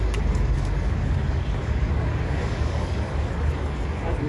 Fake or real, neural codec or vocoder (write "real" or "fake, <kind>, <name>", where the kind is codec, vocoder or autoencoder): fake, codec, DAC